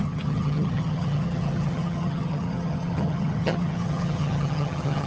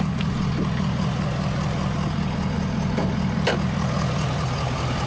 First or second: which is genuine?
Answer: second